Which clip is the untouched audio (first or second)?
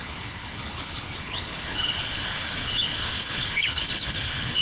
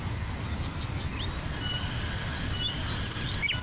second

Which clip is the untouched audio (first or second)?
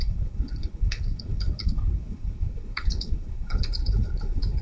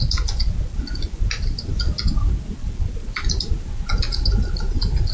second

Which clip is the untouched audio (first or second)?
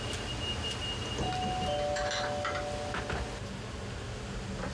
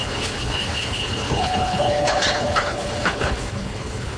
first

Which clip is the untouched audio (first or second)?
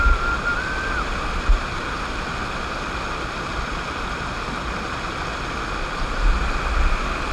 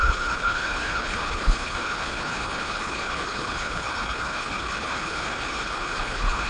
first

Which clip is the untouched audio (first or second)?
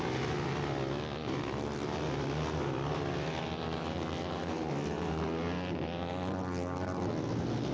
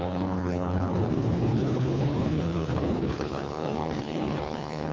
first